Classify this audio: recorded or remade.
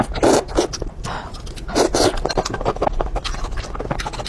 recorded